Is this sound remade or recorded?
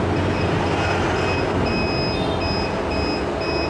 recorded